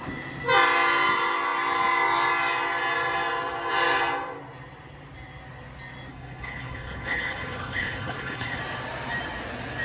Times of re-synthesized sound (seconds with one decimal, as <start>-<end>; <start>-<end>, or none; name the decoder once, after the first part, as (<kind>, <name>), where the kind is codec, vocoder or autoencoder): 6.1-8.6 (codec, HILCodec)